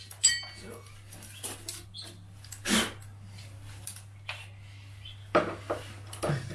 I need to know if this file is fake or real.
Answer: real